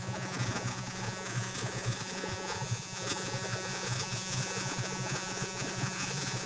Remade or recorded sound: remade